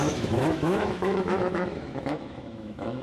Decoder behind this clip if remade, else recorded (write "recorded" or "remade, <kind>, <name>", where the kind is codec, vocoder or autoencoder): remade, autoencoder, DAC-VAE